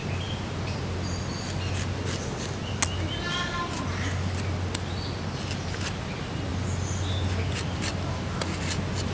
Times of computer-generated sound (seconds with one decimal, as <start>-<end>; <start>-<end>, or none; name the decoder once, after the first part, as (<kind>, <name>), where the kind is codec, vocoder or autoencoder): none